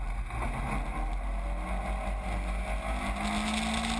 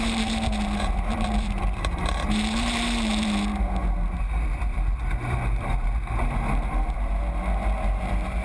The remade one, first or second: second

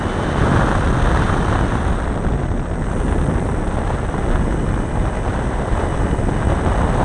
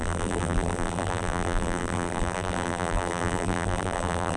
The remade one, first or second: second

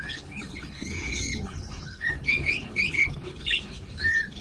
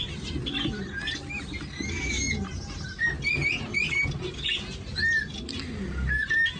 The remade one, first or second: first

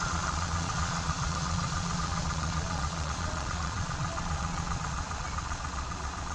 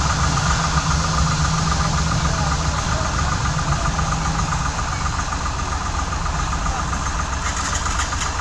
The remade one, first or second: first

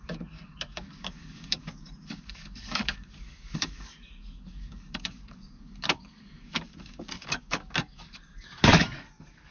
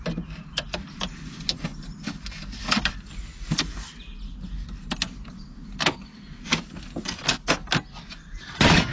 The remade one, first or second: first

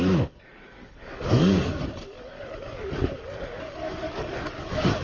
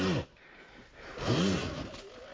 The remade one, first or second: first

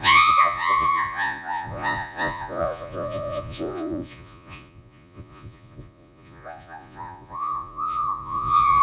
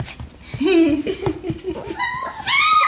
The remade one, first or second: first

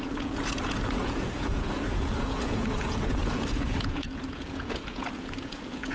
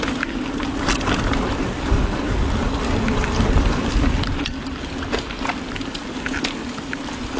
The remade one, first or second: first